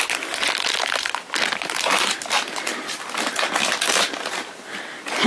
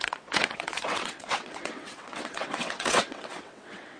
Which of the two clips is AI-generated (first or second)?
second